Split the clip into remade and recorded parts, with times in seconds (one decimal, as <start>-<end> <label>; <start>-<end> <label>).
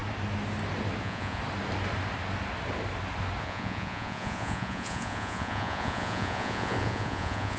0.0-1.0 recorded; 1.0-1.4 remade; 1.4-3.4 recorded; 3.4-7.6 remade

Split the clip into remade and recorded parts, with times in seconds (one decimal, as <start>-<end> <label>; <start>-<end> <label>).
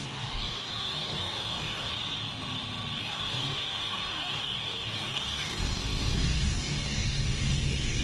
0.0-1.9 remade; 1.9-3.0 recorded; 3.0-8.0 remade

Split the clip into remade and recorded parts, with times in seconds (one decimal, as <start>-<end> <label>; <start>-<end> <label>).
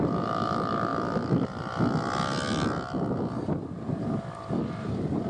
0.0-5.3 recorded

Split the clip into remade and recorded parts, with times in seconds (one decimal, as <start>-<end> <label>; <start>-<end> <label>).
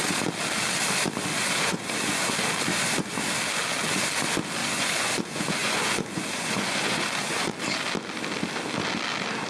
0.0-1.3 recorded; 1.3-2.3 remade; 2.3-2.7 recorded; 2.7-3.2 remade; 3.2-4.6 recorded; 4.6-7.5 remade; 7.5-9.5 recorded